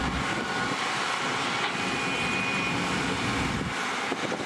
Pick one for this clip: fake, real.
real